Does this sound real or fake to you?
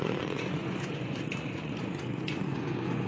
fake